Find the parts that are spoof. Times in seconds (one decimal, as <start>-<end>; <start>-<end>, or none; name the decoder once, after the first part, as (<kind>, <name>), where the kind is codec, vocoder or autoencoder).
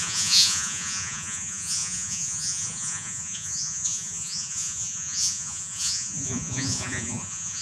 0.0-7.6 (vocoder, Vocos)